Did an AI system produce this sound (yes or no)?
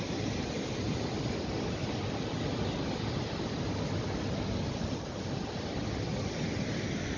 no